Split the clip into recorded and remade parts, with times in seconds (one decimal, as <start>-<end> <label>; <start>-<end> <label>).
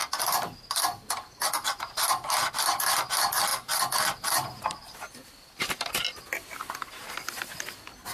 0.0-3.5 recorded; 3.5-5.9 remade; 5.9-8.1 recorded